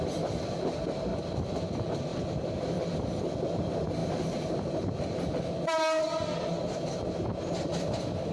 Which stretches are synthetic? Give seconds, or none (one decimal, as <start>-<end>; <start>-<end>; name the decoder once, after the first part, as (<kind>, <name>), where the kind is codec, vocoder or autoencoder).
2.1-3.4 (vocoder, BigVGAN v2); 4.0-5.2